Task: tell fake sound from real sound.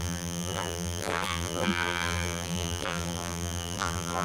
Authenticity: fake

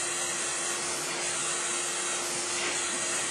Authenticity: real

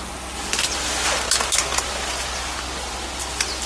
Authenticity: real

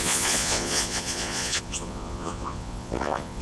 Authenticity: fake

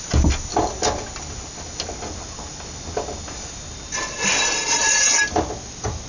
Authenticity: real